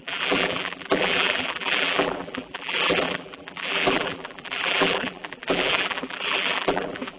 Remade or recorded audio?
remade